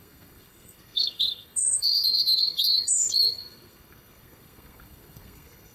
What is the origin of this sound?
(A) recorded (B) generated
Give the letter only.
B